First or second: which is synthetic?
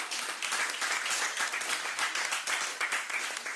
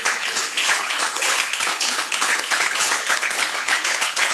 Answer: second